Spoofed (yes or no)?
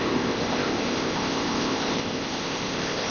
yes